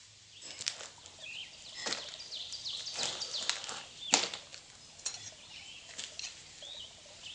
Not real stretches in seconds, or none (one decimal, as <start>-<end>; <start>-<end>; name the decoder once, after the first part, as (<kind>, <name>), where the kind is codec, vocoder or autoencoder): none